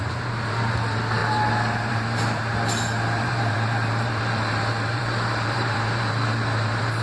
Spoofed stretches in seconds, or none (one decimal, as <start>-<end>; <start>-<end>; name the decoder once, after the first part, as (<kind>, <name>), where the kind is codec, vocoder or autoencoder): 0.0-1.2 (vocoder, BigVGAN v2); 1.9-2.4; 3.2-7.0